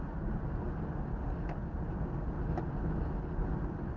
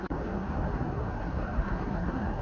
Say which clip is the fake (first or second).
second